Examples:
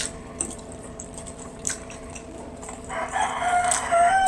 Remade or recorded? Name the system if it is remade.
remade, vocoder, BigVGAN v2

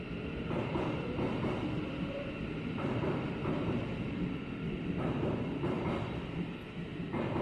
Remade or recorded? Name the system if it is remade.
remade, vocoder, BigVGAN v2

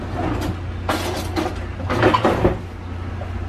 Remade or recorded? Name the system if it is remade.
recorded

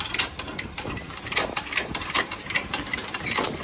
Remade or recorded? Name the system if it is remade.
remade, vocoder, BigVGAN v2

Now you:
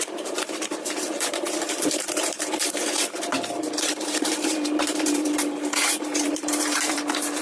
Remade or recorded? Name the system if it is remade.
remade, vocoder, BigVGAN v2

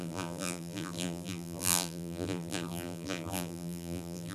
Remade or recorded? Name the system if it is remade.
remade, vocoder, BigVGAN v2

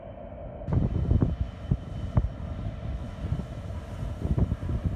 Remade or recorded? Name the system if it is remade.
recorded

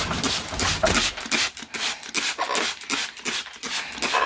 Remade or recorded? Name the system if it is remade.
recorded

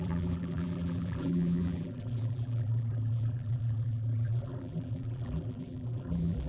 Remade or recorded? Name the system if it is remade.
remade, vocoder, BigVGAN v2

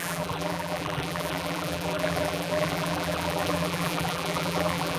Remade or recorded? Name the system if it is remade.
remade, vocoder, BigVGAN v2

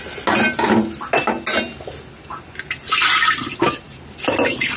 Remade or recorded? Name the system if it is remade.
recorded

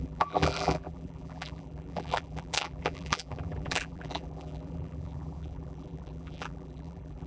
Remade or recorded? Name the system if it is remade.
remade, vocoder, BigVGAN v2